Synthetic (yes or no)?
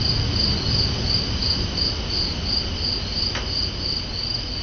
no